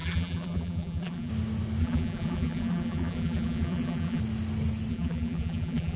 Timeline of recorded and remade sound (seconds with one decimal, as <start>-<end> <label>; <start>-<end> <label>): 0.0-1.3 remade; 1.3-1.8 recorded; 1.8-4.2 remade; 4.2-4.9 recorded; 4.9-6.0 remade